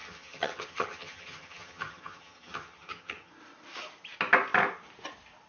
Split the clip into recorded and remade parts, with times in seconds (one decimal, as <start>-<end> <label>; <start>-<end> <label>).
0.0-3.3 remade; 3.3-5.5 recorded